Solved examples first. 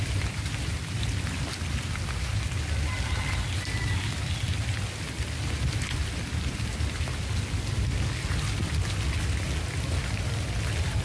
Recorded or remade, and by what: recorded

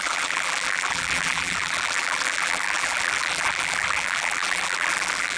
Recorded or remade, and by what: remade, vocoder, BigVGAN v2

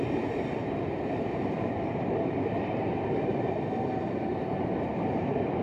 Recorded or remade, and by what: remade, vocoder, BigVGAN v2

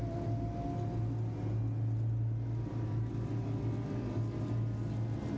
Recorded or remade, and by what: recorded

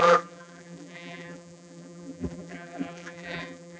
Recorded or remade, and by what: remade, vocoder, BigVGAN v2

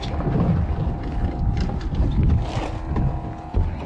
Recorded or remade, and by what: recorded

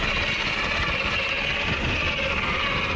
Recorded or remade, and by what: remade, vocoder, BigVGAN v2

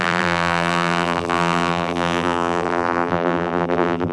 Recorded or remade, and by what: remade, vocoder, BigVGAN v2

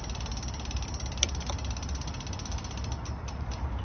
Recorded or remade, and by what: recorded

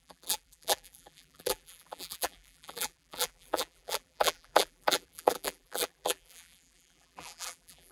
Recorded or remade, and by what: remade, vocoder, BigVGAN v2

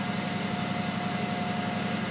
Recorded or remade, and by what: recorded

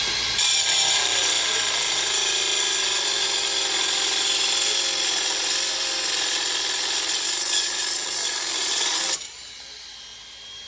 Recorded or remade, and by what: recorded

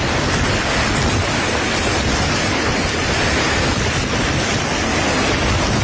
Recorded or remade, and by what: recorded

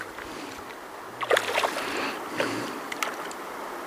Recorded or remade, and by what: recorded